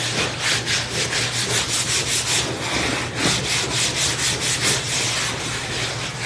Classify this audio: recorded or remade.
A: recorded